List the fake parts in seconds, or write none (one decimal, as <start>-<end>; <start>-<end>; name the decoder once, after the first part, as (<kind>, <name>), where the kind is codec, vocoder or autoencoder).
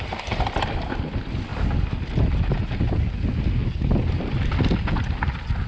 0.0-1.5 (vocoder, BigVGAN v2); 4.0-5.7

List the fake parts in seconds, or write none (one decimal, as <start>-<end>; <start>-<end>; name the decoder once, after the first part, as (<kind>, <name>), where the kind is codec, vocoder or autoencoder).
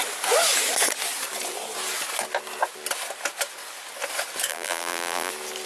4.5-5.3 (vocoder, BigVGAN v2)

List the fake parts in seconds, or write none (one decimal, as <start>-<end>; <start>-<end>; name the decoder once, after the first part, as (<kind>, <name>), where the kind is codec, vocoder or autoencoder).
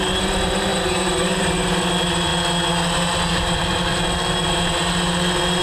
0.0-2.3 (vocoder, BigVGAN v2); 3.3-3.9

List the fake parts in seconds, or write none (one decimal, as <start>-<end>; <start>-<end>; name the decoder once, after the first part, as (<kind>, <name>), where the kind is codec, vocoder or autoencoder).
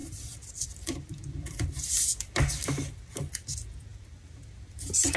0.0-3.1 (vocoder, BigVGAN v2); 3.9-4.5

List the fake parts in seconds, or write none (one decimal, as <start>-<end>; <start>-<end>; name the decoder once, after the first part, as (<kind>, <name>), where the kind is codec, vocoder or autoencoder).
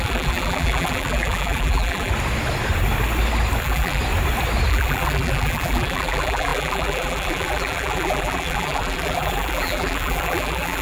0.0-2.1 (vocoder, BigVGAN v2); 3.6-4.0; 4.7-10.8